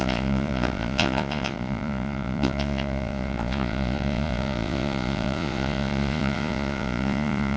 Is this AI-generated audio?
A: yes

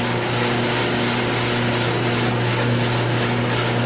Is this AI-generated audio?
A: no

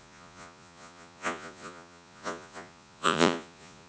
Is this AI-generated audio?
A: yes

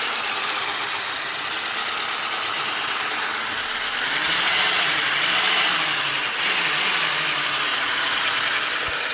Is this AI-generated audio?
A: no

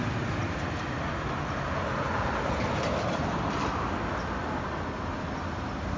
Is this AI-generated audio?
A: no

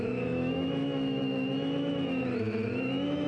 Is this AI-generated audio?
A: yes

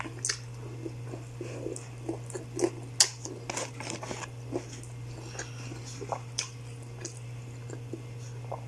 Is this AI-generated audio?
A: no